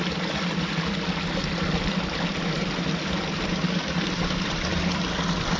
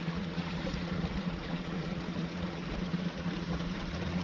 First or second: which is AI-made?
second